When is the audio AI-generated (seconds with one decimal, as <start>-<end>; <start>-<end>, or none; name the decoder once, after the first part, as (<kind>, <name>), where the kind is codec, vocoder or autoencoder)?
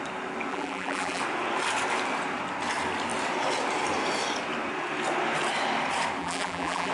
0.5-1.2 (vocoder, BigVGAN v2); 6.2-6.9